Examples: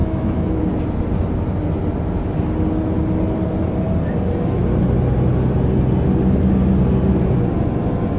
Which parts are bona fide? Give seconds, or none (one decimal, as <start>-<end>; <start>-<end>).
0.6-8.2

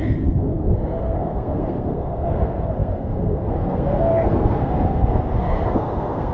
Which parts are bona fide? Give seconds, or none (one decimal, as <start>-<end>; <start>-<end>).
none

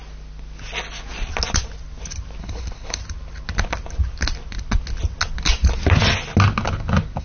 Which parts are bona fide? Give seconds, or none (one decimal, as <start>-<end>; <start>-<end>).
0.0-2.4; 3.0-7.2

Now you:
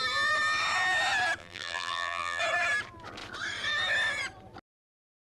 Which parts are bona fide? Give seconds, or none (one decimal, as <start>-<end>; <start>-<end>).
0.0-1.4; 2.4-5.4

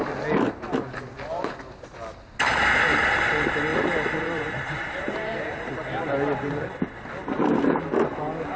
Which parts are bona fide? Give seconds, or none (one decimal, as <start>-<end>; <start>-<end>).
0.0-3.7; 6.5-8.6